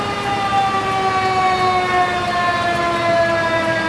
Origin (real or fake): real